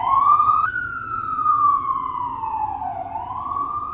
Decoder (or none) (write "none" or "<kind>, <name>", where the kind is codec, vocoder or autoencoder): vocoder, Vocos